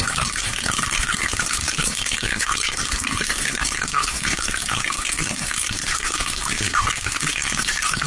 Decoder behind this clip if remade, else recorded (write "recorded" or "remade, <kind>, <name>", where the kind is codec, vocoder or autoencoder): remade, codec, SNAC